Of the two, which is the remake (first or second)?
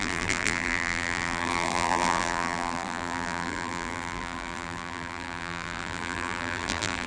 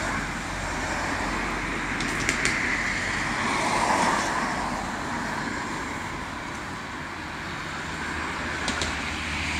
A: first